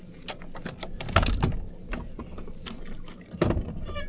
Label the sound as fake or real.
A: real